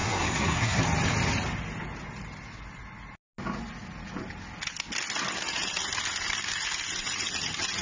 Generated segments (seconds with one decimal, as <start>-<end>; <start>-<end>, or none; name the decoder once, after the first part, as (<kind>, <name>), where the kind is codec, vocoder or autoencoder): 0.0-0.8 (codec, SNAC)